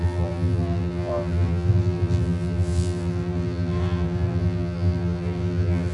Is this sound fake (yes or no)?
yes